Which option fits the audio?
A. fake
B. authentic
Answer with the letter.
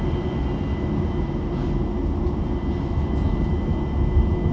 B